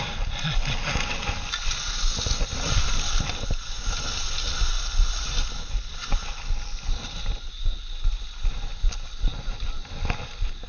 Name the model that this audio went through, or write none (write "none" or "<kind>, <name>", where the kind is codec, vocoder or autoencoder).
none